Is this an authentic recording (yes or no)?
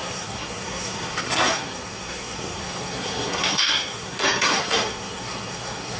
no